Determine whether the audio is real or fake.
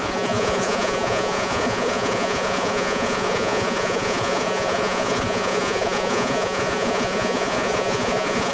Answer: fake